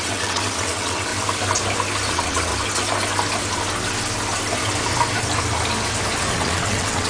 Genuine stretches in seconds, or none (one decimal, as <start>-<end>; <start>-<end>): 1.1-2.1; 2.5-6.3